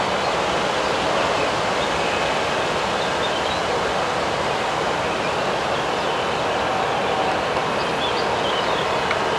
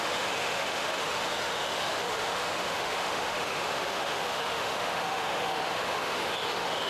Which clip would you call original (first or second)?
first